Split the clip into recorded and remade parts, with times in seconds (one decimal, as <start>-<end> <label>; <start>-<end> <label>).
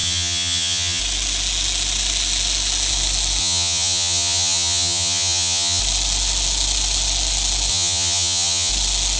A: 0.0-1.0 remade; 1.0-3.4 recorded; 3.4-5.8 remade; 5.8-7.7 recorded; 7.7-8.7 remade; 8.7-9.2 recorded